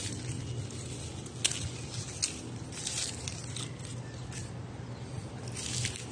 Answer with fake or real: real